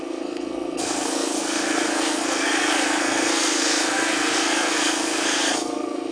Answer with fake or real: fake